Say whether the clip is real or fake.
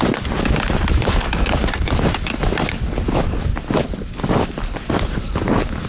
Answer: real